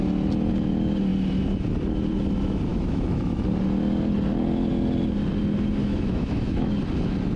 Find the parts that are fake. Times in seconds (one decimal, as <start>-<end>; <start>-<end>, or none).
2.7-3.4; 5.8-6.7